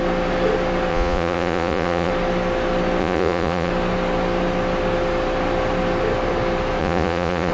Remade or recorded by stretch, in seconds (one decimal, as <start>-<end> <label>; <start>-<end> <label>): 0.0-0.9 recorded; 0.9-2.1 remade; 2.1-3.0 recorded; 3.0-3.7 remade; 3.7-6.8 recorded; 6.8-7.5 remade